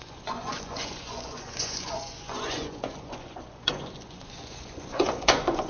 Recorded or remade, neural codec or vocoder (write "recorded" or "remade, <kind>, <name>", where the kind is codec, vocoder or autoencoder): remade, vocoder, Vocos